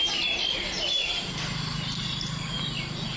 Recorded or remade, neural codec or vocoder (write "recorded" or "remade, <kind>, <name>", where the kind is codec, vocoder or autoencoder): recorded